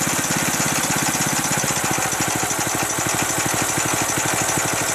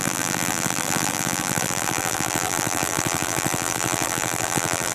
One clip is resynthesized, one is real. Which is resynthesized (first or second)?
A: second